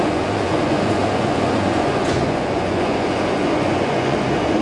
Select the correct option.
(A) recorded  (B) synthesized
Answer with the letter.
B